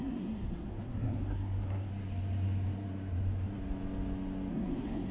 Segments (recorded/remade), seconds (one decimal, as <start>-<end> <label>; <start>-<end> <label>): 0.0-1.9 remade; 1.9-4.5 recorded; 4.5-5.1 remade